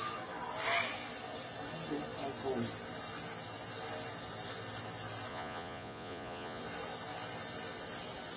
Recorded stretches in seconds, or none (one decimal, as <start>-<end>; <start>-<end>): 0.0-5.3; 6.6-8.4